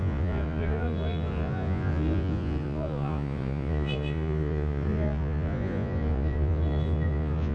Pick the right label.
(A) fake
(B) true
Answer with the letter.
A